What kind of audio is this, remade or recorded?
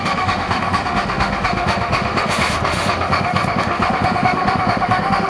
remade